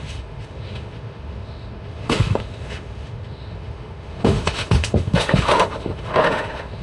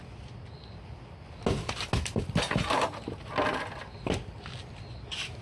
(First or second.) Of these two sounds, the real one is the second